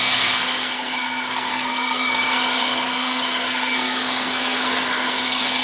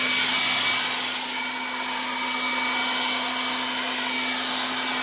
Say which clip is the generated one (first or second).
first